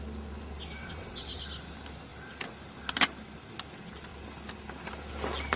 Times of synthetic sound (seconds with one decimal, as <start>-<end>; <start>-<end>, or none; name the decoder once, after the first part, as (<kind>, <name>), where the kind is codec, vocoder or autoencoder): 0.8-1.4 (vocoder, WaveNeXt)